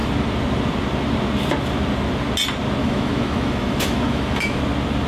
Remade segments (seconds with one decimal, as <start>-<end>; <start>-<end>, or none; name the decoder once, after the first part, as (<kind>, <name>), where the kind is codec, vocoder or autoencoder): 2.8-4.6 (autoencoder, DAC-VAE)

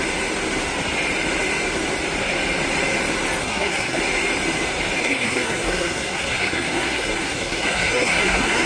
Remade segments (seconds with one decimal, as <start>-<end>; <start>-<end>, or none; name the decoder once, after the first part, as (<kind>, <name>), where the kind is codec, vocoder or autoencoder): 3.4-4.0 (codec, SNAC); 5.0-8.7

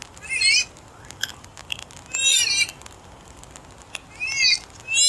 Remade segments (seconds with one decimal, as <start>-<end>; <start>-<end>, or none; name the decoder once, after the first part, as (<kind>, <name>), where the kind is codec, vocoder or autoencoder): none

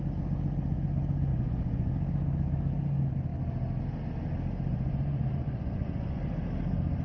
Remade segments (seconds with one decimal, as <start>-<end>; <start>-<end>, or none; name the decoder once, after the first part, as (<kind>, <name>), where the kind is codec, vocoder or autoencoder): 1.3-1.9 (vocoder, Vocos); 4.7-6.3